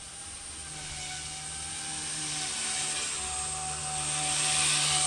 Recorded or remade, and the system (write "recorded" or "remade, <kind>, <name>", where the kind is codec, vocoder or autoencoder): recorded